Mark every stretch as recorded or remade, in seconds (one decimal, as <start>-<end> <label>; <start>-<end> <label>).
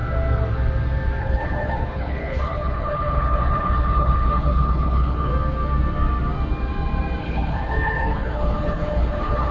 0.0-1.2 recorded; 1.2-5.3 remade; 5.3-7.2 recorded; 7.2-9.5 remade